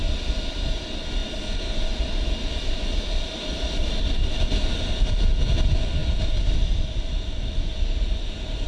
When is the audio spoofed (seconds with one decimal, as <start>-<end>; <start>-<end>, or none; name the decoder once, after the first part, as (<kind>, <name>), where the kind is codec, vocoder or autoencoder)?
none